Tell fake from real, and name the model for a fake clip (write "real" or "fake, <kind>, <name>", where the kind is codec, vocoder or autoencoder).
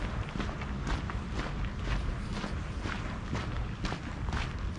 real